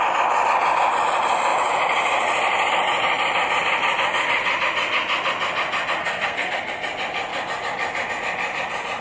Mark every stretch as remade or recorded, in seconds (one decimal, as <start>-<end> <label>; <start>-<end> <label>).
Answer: 0.0-6.0 recorded; 6.0-6.5 remade; 6.5-9.0 recorded